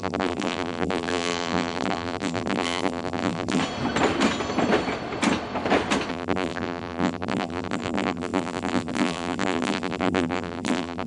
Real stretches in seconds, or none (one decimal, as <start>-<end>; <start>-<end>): 3.6-6.1